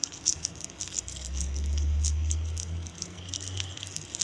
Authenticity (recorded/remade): remade